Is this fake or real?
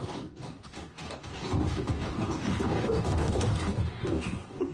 fake